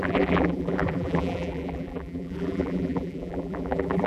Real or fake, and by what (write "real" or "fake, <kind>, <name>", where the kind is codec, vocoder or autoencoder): fake, vocoder, BigVGAN v2